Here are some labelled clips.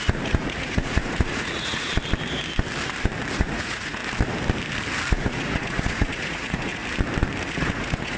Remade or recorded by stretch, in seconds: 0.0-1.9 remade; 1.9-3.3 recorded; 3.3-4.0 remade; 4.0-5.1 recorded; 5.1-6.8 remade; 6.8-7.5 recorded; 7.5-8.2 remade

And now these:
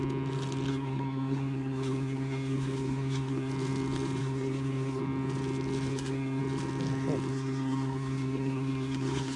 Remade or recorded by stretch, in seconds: 0.0-0.7 recorded; 0.7-3.5 remade; 3.5-4.2 recorded; 4.2-5.0 remade; 5.0-5.9 recorded; 5.9-6.4 remade; 6.4-7.3 recorded; 7.3-9.4 remade

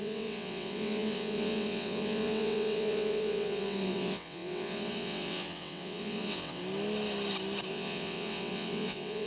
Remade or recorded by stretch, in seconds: 0.0-6.6 remade; 6.6-7.7 recorded; 7.7-9.3 remade

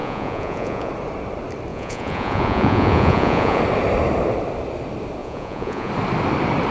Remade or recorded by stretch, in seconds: 0.0-0.9 remade; 0.9-1.7 recorded; 1.7-3.6 remade; 3.6-5.2 recorded; 5.2-5.9 remade; 5.9-6.7 recorded

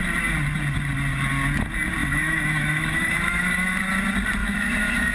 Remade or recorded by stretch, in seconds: 0.0-2.0 recorded; 2.0-3.8 remade; 3.8-4.4 recorded; 4.4-5.1 remade

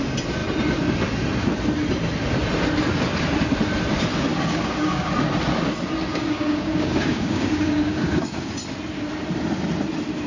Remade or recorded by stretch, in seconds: 0.0-4.3 recorded; 4.3-5.1 remade; 5.1-6.1 recorded; 6.1-8.5 remade; 8.5-10.3 recorded

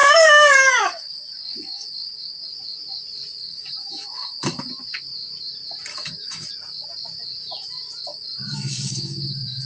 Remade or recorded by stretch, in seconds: 0.0-2.5 remade; 2.5-3.4 recorded; 3.4-4.7 remade; 4.7-5.9 recorded; 5.9-6.5 remade; 6.5-8.1 recorded; 8.1-9.7 remade

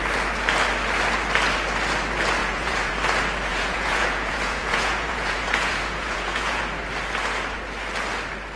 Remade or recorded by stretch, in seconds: 0.0-2.4 recorded; 2.4-2.9 remade; 2.9-3.5 recorded; 3.5-6.6 remade; 6.6-8.6 recorded